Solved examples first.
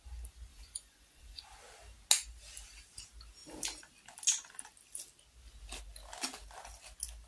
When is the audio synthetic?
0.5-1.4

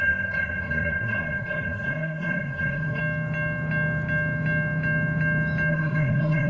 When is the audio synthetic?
0.0-3.0; 5.7-6.5

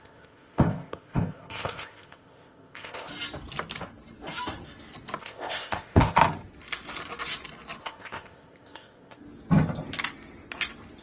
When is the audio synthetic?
0.0-3.1; 5.2-6.2; 7.8-9.2

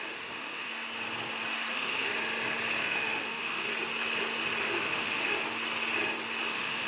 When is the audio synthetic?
0.0-0.7; 1.7-2.1; 2.8-3.7; 4.6-5.4; 6.5-6.9

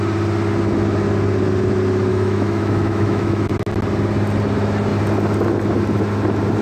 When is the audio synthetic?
2.1-3.5

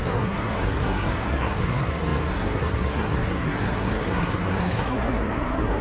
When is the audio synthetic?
0.0-5.8